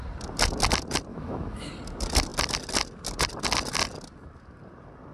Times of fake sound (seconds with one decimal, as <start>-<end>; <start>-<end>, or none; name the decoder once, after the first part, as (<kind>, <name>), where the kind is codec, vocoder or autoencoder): 1.1-1.7 (autoencoder, DAC-VAE)